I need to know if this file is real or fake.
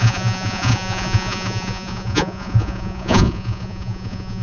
fake